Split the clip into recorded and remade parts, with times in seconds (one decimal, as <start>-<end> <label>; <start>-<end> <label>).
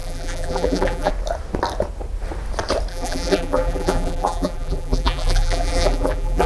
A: 0.0-1.1 remade; 1.1-2.9 recorded; 2.9-6.5 remade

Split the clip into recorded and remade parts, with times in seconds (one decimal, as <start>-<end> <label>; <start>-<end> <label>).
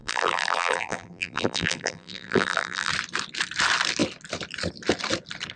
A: 0.0-2.9 remade; 2.9-5.6 recorded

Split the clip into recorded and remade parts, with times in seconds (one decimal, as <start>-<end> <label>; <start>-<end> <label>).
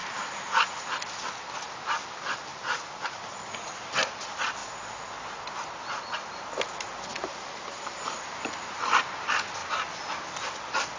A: 0.0-2.5 recorded; 2.5-3.5 remade; 3.5-11.0 recorded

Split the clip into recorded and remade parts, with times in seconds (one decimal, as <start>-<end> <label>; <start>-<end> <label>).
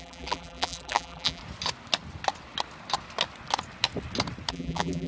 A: 0.0-1.4 remade; 1.4-4.5 recorded; 4.5-5.1 remade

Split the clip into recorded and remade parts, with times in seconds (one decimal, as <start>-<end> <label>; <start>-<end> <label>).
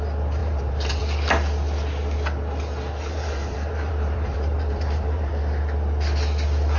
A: 0.0-0.4 recorded; 0.4-1.0 remade; 1.0-3.0 recorded; 3.0-5.3 remade; 5.3-6.8 recorded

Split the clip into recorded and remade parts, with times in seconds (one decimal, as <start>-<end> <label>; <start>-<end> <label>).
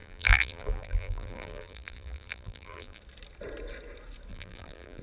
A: 0.0-3.0 remade; 3.0-4.3 recorded; 4.3-5.0 remade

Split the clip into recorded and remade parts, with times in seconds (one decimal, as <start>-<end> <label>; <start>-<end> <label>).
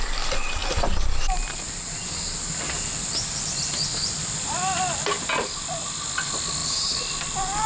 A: 0.0-7.7 recorded